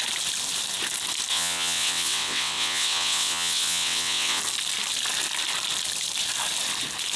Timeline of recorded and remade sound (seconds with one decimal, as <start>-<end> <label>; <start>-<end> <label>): 0.0-1.3 recorded; 1.3-4.4 remade; 4.4-7.2 recorded